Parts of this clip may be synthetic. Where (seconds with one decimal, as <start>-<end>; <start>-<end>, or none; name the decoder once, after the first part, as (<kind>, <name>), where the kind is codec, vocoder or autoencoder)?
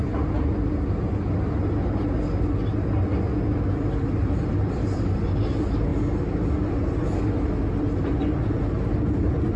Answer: none